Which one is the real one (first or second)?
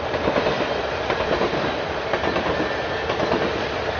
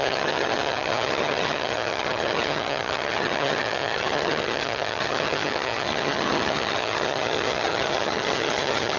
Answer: first